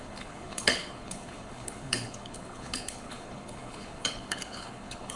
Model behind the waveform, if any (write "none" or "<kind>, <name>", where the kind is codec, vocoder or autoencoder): codec, HILCodec